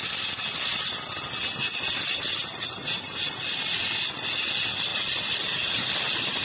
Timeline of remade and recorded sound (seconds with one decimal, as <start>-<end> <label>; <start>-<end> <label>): 0.0-2.4 recorded; 2.4-3.7 remade; 3.7-6.4 recorded